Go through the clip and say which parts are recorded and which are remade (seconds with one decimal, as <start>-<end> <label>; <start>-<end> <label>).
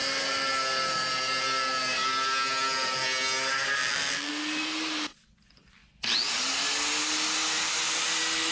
0.0-3.8 recorded; 3.8-4.3 remade; 4.3-8.5 recorded